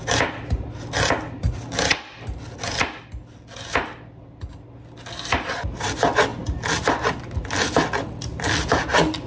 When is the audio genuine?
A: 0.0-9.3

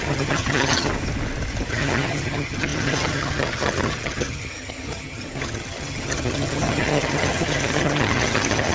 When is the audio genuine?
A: 0.9-1.7

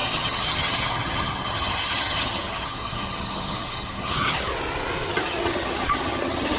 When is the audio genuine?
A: 4.5-5.1